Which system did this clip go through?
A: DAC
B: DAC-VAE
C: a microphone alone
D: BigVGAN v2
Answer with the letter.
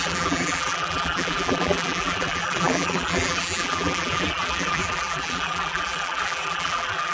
D